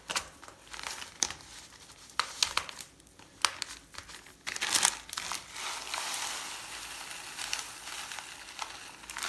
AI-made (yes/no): no